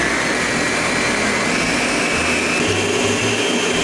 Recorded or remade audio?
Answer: recorded